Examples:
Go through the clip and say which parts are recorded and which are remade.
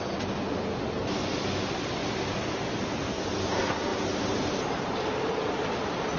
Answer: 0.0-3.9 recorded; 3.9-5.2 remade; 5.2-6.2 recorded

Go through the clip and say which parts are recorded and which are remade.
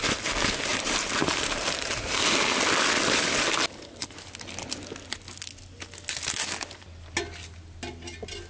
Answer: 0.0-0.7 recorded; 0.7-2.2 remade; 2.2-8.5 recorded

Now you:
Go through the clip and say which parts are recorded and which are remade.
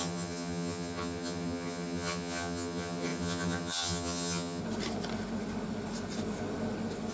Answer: 0.0-4.6 remade; 4.6-7.1 recorded